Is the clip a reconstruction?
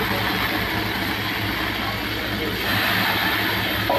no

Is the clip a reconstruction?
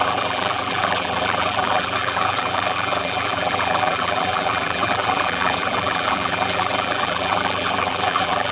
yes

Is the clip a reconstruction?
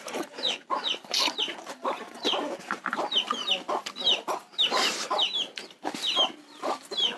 yes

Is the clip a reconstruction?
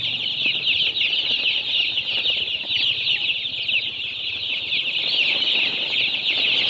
no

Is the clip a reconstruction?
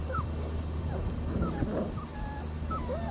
yes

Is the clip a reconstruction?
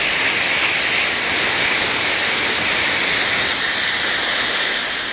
yes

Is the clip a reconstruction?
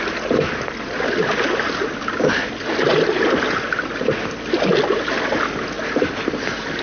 no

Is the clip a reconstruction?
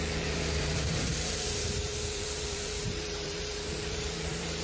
yes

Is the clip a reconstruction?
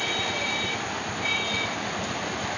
no